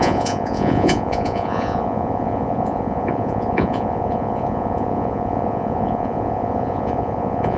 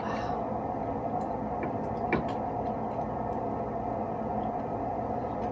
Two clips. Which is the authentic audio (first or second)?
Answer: second